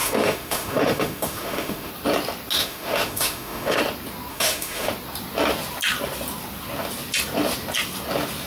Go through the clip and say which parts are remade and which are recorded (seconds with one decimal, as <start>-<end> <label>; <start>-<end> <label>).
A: 0.0-1.9 remade; 1.9-2.6 recorded; 2.6-3.8 remade; 3.8-4.3 recorded; 4.3-4.9 remade; 4.9-8.5 recorded

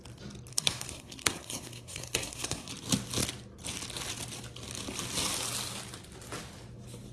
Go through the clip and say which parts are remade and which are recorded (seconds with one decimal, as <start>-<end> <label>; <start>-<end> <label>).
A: 0.0-0.5 recorded; 0.5-2.7 remade; 2.7-7.1 recorded